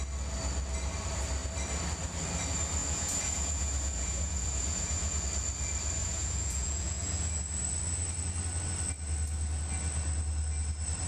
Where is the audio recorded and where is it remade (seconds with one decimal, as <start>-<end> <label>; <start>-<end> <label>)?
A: 0.0-2.8 recorded; 2.8-5.2 remade; 5.2-6.0 recorded; 6.0-7.4 remade; 7.4-11.1 recorded